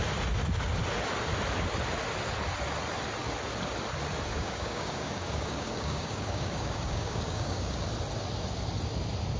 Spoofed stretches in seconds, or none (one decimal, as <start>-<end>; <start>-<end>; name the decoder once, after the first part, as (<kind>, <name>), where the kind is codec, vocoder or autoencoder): 4.3-7.8 (codec, DAC)